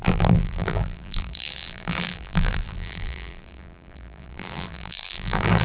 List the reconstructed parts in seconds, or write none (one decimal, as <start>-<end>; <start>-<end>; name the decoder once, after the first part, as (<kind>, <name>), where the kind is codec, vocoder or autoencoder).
0.0-5.6 (vocoder, BigVGAN v2)